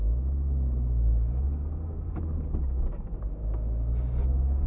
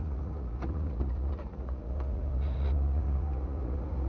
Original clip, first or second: first